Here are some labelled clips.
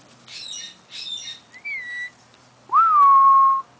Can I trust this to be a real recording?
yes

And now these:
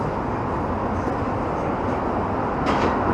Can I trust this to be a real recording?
yes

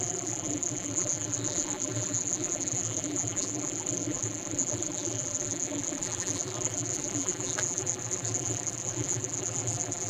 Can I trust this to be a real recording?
no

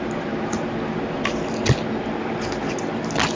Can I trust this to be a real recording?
yes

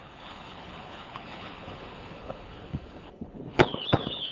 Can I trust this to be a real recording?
no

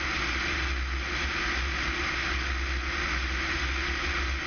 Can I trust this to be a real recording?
yes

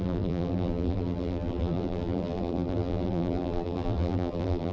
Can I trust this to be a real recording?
no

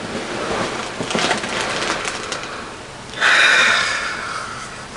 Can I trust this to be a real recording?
yes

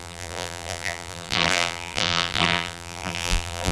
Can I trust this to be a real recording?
no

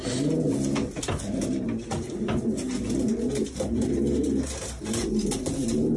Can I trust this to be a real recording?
yes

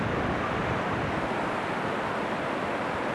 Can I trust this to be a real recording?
yes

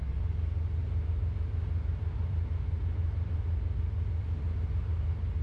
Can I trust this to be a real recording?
yes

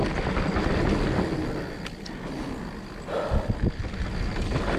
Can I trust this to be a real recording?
yes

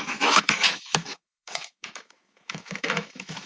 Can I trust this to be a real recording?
no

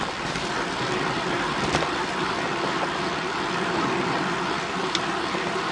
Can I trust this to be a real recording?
no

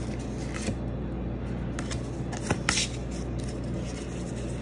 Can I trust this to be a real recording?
yes